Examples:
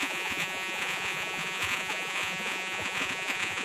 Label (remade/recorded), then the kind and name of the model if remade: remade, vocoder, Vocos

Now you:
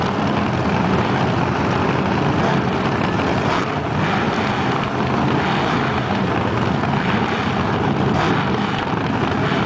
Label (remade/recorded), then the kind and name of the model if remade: recorded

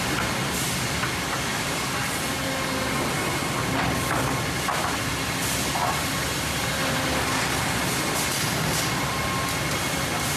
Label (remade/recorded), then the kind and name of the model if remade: recorded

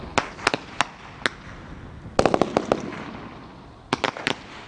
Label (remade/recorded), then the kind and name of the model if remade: recorded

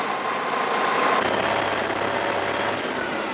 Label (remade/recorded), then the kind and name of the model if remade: recorded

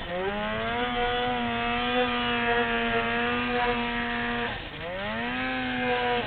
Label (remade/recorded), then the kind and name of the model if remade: recorded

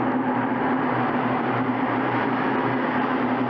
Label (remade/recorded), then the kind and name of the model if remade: remade, vocoder, BigVGAN v2